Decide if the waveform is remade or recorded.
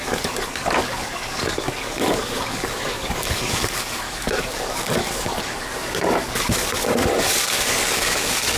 remade